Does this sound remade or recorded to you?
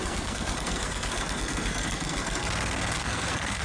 remade